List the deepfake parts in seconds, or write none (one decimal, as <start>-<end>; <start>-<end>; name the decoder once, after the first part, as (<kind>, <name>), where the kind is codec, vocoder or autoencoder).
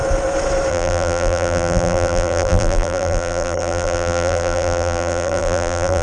0.7-6.0 (vocoder, BigVGAN v2)